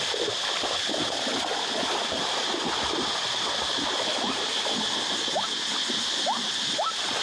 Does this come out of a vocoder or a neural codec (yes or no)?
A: no